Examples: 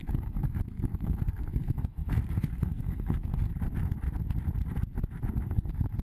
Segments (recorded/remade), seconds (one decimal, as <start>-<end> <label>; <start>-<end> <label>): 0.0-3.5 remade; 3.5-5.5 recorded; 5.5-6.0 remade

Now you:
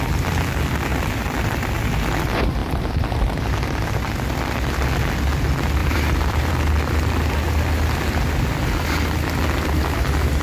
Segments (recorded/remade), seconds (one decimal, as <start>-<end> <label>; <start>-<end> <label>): 0.0-0.9 recorded; 0.9-1.9 remade; 1.9-2.6 recorded; 2.6-3.1 remade; 3.1-5.8 recorded; 5.8-6.5 remade; 6.5-10.4 recorded

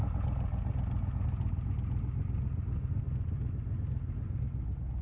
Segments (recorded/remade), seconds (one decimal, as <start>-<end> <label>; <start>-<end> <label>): 0.0-5.0 recorded

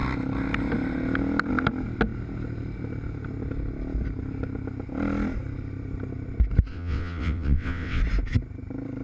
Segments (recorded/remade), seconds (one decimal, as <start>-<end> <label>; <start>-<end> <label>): 0.0-6.7 recorded; 6.7-8.0 remade; 8.0-9.0 recorded